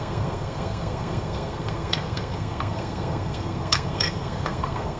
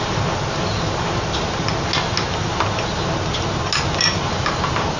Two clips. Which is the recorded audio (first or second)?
second